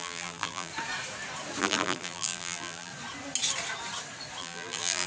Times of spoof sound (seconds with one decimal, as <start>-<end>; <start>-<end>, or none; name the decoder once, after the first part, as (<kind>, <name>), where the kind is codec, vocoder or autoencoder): 0.0-0.7 (vocoder, BigVGAN v2); 1.6-2.9; 4.4-5.1